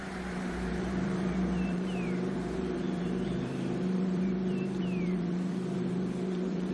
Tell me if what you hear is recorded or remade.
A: remade